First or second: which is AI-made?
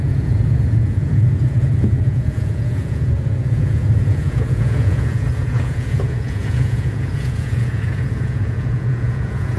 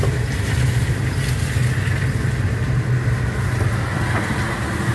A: first